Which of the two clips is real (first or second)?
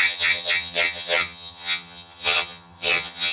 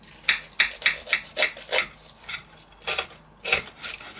second